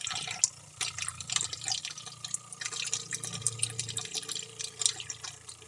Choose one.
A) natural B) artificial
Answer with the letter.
A